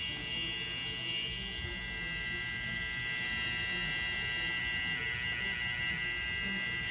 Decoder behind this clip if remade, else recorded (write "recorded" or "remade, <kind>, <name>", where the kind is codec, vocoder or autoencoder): recorded